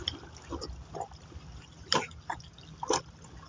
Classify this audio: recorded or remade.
recorded